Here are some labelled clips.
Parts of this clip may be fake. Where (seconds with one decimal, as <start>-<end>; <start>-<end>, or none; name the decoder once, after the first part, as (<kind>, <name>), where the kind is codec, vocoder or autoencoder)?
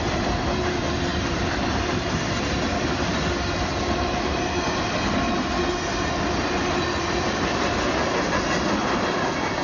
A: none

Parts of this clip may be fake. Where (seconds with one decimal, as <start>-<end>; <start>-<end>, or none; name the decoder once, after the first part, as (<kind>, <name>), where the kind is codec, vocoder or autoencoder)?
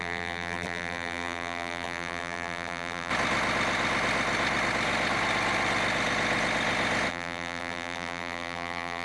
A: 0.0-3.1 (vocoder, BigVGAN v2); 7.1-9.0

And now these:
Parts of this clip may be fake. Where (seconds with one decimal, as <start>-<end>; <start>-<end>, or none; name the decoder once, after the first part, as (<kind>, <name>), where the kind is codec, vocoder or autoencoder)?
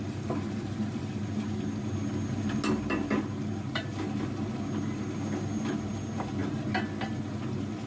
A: 0.0-1.0 (vocoder, BigVGAN v2)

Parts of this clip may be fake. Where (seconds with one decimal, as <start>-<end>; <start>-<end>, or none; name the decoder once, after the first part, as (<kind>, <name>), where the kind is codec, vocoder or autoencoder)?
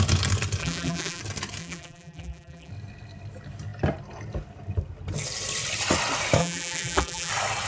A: 0.6-1.2 (vocoder, BigVGAN v2); 1.6-2.7; 6.4-7.3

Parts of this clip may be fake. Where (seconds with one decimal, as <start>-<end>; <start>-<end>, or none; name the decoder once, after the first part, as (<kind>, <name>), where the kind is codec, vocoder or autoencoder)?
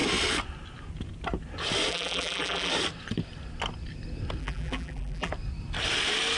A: 1.9-2.7 (vocoder, BigVGAN v2); 4.4-5.3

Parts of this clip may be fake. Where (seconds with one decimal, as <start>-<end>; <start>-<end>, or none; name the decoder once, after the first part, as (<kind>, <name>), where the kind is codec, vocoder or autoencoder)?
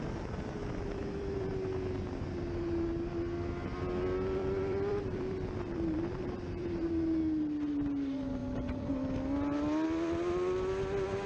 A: 0.6-1.5 (vocoder, BigVGAN v2); 4.4-6.9; 8.4-8.9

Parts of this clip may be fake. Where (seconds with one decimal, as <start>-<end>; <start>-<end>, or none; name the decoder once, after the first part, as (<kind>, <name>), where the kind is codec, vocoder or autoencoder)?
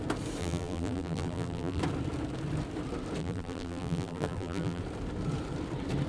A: 0.4-1.8 (vocoder, BigVGAN v2); 3.2-4.8